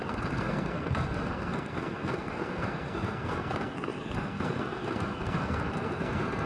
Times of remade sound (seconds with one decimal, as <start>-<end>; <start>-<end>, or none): 0.0-6.5